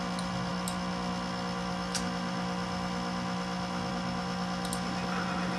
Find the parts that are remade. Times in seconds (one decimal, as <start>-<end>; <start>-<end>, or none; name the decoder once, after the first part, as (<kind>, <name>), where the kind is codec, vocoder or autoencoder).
none